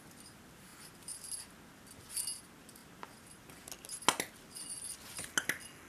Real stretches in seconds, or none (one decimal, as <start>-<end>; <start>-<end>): 0.0-5.9